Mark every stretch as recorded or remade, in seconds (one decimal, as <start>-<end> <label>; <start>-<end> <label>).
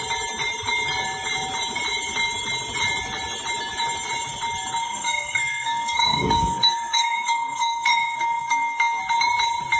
0.0-4.8 recorded; 4.8-9.0 remade; 9.0-9.8 recorded